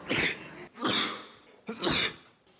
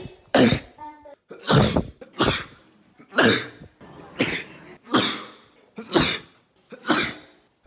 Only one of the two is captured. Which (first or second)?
first